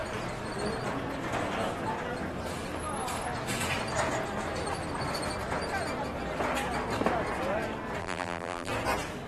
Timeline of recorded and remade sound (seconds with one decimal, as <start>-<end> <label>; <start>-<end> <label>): 0.0-8.0 recorded; 8.0-8.7 remade; 8.7-9.3 recorded